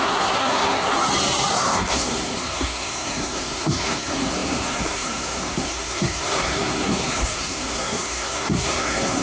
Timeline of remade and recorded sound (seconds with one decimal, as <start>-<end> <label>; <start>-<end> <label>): 0.0-0.9 remade; 0.9-1.5 recorded; 1.5-9.2 remade